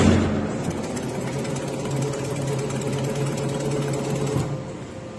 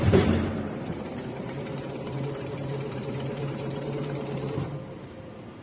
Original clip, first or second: first